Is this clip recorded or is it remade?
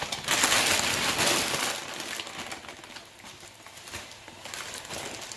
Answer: recorded